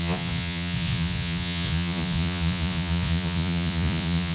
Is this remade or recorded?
remade